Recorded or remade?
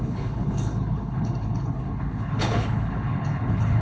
remade